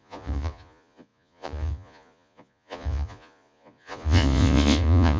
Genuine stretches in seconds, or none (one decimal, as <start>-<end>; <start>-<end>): none